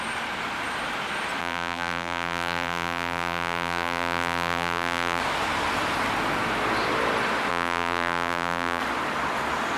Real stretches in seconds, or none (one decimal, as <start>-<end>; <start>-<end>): 0.0-1.4; 5.2-7.5; 8.8-9.8